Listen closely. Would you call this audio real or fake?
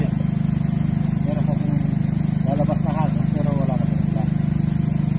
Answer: real